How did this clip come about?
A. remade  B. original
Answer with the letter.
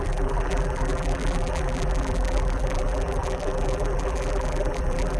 A